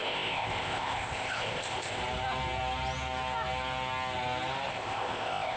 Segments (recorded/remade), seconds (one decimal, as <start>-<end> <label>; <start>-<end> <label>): 0.0-2.0 remade; 2.0-4.7 recorded; 4.7-5.6 remade